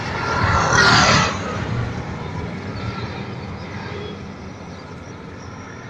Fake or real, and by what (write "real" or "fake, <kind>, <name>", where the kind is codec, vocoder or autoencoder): real